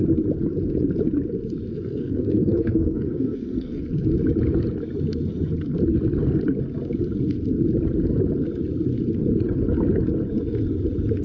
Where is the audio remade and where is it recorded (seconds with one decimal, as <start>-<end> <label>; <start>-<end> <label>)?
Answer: 0.0-1.7 recorded; 1.7-3.8 remade; 3.8-11.2 recorded